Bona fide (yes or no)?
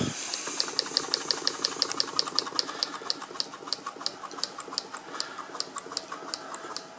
yes